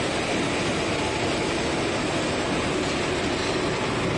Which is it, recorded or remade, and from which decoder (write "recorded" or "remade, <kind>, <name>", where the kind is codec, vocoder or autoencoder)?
recorded